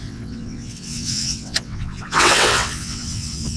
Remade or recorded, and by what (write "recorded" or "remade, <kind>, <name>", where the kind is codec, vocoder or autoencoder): remade, vocoder, WaveNeXt